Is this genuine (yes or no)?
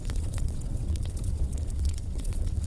no